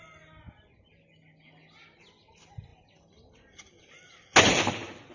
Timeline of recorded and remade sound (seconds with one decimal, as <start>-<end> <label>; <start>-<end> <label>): 0.0-5.1 recorded